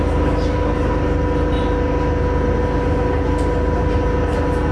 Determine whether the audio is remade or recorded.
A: recorded